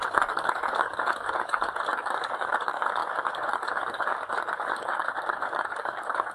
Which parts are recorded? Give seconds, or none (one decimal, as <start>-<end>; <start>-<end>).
none